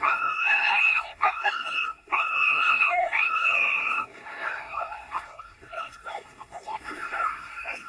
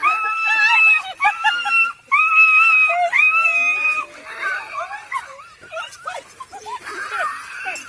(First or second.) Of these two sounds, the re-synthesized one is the first